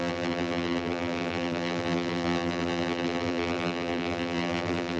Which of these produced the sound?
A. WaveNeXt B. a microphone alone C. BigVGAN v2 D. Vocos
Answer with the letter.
C